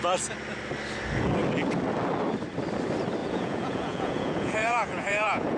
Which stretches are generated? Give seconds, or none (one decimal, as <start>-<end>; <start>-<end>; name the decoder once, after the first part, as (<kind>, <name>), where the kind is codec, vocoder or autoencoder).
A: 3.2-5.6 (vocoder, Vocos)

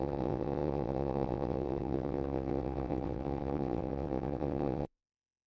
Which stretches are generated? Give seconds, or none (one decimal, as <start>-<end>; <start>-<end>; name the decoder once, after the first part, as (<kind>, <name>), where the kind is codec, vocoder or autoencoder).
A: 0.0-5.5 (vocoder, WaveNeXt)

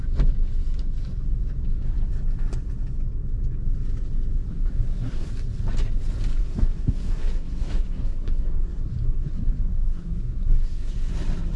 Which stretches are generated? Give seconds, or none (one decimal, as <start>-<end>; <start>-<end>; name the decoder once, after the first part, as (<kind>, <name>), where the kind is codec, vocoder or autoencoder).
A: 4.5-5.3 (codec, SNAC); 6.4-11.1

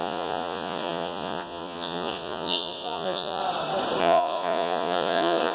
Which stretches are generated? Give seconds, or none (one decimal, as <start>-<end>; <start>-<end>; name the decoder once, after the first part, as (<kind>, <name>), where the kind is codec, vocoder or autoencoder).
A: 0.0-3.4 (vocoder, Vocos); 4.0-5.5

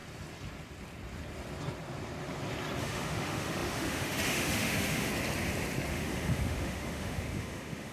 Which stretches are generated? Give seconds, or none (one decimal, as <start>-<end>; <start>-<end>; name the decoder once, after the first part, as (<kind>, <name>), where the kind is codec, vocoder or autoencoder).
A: 2.8-5.1 (autoencoder, DAC-VAE); 5.9-7.9

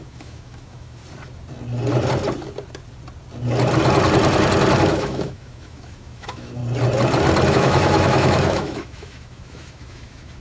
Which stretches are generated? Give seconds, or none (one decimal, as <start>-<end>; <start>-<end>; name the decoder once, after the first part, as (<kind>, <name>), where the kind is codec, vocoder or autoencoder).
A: 0.0-1.0 (autoencoder, DAC-VAE); 4.9-6.6; 7.5-10.4

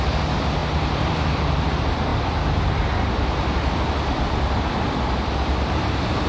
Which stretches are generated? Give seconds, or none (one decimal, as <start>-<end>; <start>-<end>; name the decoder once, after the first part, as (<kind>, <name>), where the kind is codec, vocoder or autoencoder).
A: 0.0-6.3 (vocoder, BigVGAN v2)